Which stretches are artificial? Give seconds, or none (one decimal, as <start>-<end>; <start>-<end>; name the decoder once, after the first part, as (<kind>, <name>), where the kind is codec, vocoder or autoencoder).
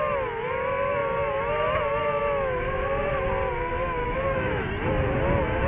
4.0-4.7 (autoencoder, DAC-VAE)